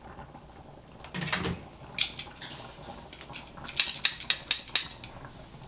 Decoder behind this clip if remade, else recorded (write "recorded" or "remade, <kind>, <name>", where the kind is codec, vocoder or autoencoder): recorded